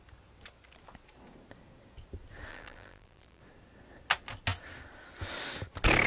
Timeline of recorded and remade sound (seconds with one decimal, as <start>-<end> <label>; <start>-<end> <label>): 0.0-2.5 recorded; 2.5-3.4 remade; 3.4-6.1 recorded